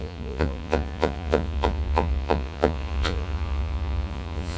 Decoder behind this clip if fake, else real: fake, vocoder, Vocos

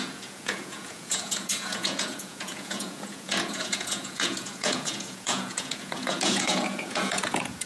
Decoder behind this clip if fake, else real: fake, vocoder, Vocos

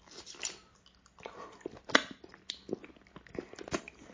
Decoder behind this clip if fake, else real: real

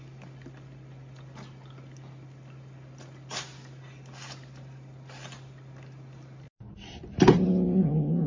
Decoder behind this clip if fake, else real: real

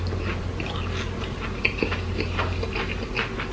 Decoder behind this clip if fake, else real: real